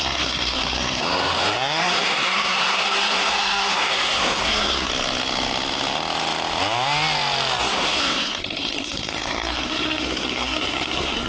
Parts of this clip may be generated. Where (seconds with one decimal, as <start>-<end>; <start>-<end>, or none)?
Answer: 0.0-4.9; 7.6-11.3

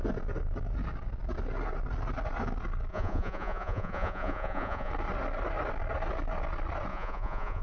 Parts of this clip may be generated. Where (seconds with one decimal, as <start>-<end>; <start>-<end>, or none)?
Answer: 2.9-4.9; 6.9-7.6

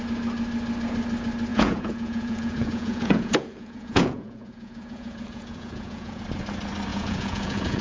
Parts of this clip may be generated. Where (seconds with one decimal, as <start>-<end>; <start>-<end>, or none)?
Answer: 1.5-6.2; 6.9-7.8

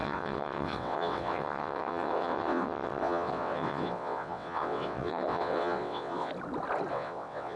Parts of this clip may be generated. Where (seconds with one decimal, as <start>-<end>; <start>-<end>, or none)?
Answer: 0.0-6.3; 6.9-7.6

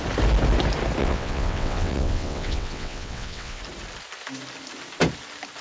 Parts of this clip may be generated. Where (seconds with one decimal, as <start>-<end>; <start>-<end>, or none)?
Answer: 1.0-3.6

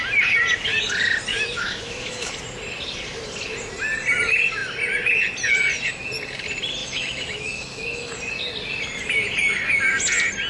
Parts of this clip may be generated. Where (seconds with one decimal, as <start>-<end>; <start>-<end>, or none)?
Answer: 1.3-2.3; 6.8-8.1

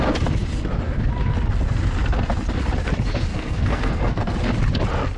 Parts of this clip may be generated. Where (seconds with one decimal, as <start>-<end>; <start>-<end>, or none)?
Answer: 3.3-4.4

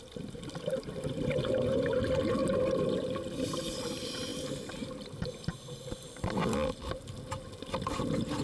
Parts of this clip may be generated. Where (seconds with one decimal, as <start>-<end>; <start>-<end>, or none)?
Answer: none